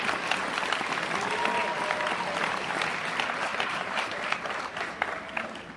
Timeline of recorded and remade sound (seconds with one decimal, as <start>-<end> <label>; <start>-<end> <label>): 0.0-3.5 recorded; 3.5-4.9 remade; 4.9-5.8 recorded